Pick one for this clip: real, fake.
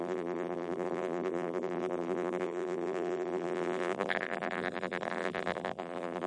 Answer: fake